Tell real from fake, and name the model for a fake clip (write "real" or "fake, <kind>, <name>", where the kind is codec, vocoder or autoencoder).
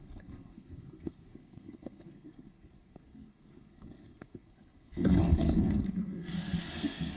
fake, codec, SNAC